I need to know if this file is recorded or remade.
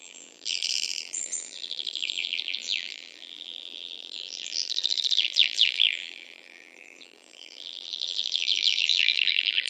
remade